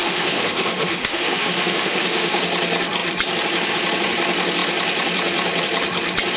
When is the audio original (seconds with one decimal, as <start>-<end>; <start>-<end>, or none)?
2.4-6.4

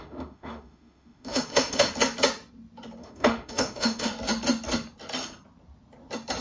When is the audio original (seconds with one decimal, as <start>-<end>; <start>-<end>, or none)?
1.9-3.0; 4.1-6.4

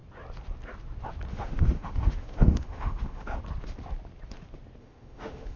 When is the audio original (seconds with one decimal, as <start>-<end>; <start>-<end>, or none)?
0.0-1.3; 3.4-4.8

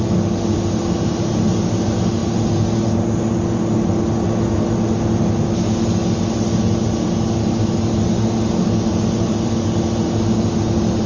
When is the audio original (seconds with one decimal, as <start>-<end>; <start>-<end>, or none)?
0.0-11.1

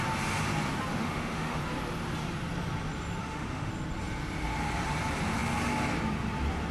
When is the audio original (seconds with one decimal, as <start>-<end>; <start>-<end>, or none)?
0.0-0.9; 1.6-3.2; 3.7-6.7

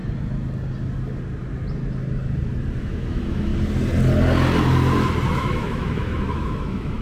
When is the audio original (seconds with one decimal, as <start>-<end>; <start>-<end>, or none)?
0.0-2.8; 3.5-5.3

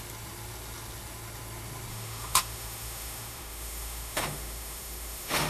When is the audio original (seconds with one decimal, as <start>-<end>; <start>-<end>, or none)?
0.0-1.9